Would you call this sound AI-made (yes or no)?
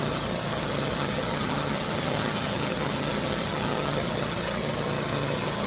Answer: yes